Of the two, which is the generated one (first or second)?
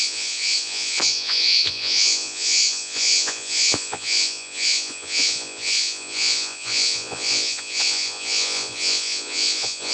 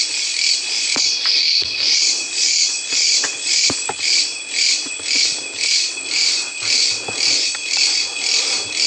first